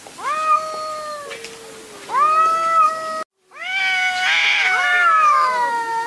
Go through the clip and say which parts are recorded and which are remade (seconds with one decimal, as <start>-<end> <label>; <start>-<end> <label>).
0.0-4.5 recorded; 4.5-6.1 remade